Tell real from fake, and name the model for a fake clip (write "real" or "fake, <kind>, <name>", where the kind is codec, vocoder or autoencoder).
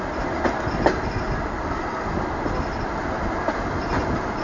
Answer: real